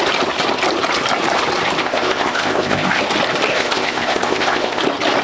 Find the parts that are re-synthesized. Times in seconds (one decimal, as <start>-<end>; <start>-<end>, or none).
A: 1.8-3.0; 3.5-4.8